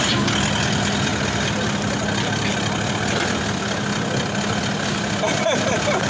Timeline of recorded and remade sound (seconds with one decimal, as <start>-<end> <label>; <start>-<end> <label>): 0.0-6.1 recorded